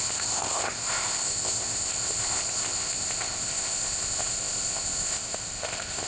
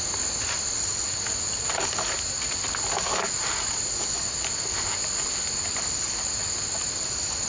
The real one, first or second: second